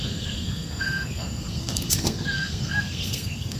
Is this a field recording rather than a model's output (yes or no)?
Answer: no